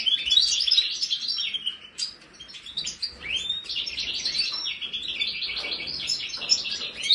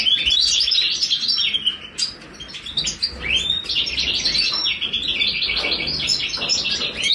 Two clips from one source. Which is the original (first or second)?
second